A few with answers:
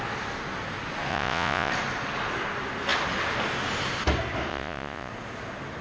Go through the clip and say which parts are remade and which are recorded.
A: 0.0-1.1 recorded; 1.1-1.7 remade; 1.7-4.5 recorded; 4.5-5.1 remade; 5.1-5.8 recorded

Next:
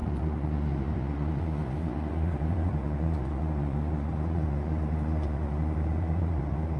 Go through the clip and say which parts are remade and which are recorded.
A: 0.0-6.8 remade

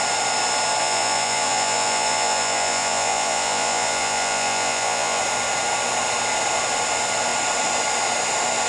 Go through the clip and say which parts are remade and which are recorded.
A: 0.0-0.8 recorded; 0.8-5.2 remade; 5.2-8.7 recorded